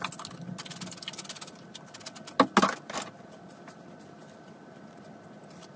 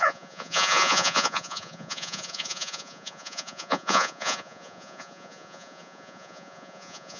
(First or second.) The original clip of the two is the first